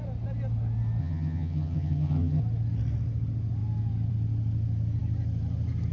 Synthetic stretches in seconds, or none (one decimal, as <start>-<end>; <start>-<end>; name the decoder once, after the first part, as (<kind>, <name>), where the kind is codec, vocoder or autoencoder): 1.0-2.4 (vocoder, HiFi-GAN)